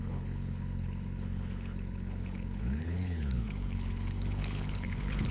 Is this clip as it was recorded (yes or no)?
no